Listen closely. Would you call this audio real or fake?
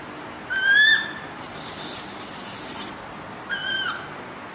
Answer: real